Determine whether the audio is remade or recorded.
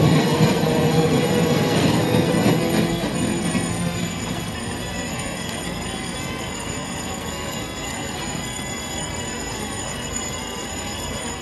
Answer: remade